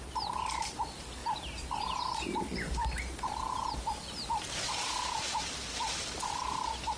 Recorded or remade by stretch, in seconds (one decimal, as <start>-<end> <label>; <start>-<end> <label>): 0.0-7.0 recorded